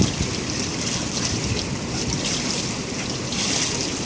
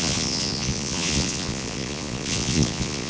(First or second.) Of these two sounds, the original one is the first